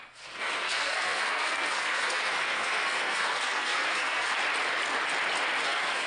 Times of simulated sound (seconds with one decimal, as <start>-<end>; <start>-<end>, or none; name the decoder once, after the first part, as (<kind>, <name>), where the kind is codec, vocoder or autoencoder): 0.0-4.3 (codec, SNAC); 5.6-6.1